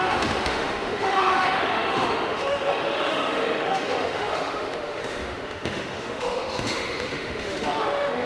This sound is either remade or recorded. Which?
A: remade